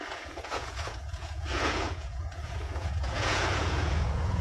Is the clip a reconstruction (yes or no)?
yes